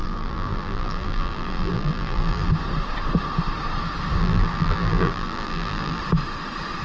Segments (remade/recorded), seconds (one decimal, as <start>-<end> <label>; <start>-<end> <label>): 0.0-2.5 remade; 2.5-4.2 recorded; 4.2-6.0 remade; 6.0-6.8 recorded